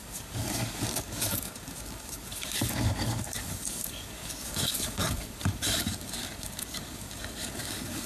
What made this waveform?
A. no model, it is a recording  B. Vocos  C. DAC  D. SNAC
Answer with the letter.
C